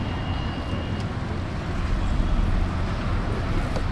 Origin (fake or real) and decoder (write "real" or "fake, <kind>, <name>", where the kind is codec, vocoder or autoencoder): real